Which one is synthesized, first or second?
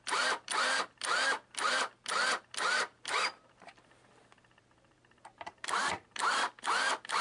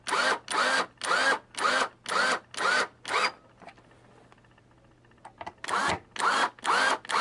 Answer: first